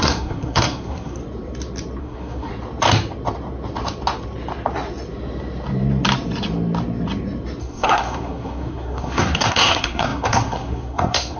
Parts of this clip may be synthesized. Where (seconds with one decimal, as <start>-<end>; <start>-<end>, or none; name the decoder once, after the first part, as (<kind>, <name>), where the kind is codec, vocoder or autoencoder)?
0.0-1.2 (codec, SNAC); 2.0-2.5; 7.6-11.4